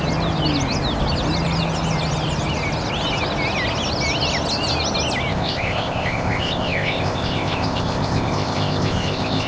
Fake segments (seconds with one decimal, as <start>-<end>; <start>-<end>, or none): 5.3-9.5